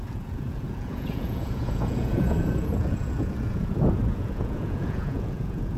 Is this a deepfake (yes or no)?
yes